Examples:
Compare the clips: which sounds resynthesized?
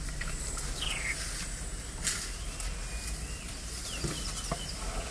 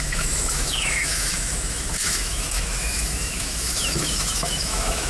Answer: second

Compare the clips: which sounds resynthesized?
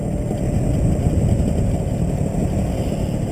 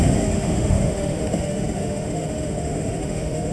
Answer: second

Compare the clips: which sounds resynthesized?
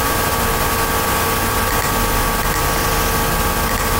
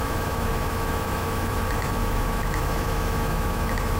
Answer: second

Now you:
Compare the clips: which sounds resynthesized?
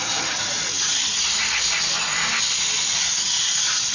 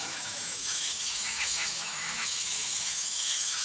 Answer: second